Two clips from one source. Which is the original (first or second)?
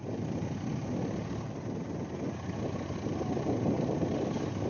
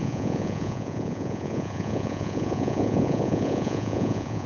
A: first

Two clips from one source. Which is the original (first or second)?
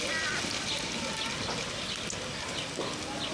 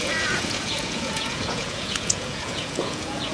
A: first